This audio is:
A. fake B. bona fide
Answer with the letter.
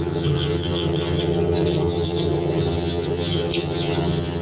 A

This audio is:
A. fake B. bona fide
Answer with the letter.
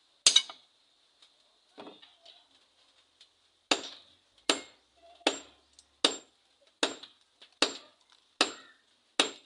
B